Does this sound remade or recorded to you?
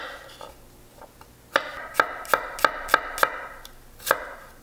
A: recorded